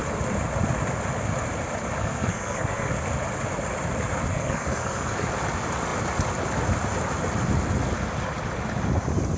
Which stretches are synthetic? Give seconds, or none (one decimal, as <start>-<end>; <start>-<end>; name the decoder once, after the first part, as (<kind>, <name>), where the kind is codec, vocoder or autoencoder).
2.0-2.9 (codec, SNAC); 4.3-5.3